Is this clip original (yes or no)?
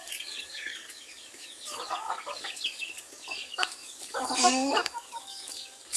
no